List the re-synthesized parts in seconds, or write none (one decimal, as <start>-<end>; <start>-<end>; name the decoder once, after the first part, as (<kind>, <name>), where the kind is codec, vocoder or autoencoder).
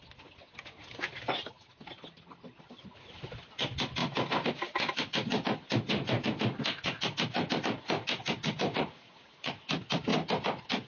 8.7-9.5 (vocoder, Vocos)